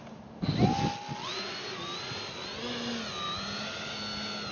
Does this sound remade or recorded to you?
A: recorded